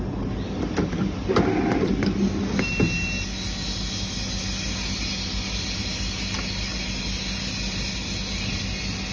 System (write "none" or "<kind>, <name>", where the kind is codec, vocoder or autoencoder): none